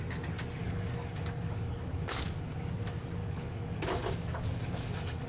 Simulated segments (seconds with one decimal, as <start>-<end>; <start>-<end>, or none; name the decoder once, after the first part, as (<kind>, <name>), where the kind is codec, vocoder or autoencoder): 0.6-2.5 (codec, DAC); 3.2-5.3